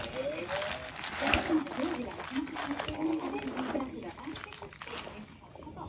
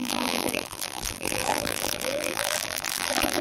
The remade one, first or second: second